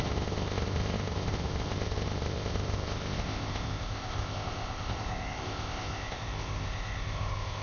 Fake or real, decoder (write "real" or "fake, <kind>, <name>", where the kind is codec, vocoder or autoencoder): fake, codec, ZipCodec